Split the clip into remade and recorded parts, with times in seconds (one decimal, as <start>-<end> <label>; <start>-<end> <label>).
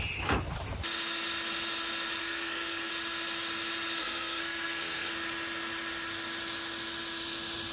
0.0-2.2 recorded; 2.2-2.9 remade; 2.9-4.0 recorded; 4.0-5.1 remade; 5.1-7.7 recorded